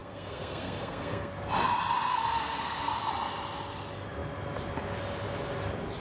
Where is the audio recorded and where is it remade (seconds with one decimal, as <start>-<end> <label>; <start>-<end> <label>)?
0.0-1.3 remade; 1.3-2.1 recorded; 2.1-3.1 remade; 3.1-6.0 recorded